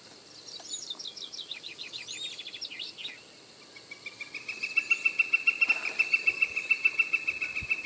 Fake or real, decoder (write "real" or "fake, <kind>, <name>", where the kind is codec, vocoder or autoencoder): real